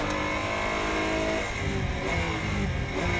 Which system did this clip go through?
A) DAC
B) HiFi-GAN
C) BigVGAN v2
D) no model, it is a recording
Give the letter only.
D